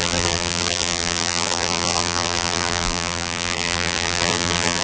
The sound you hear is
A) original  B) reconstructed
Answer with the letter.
B